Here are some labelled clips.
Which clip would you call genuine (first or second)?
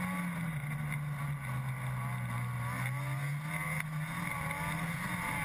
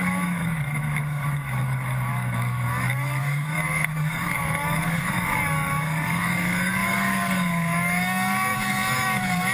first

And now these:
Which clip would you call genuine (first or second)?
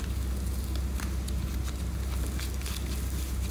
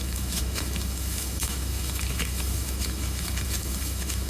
first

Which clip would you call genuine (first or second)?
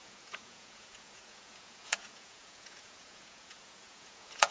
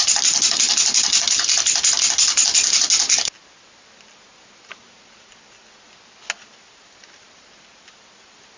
second